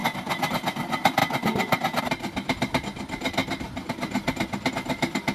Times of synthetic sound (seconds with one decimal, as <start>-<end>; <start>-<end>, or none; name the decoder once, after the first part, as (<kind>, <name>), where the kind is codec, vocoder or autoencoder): none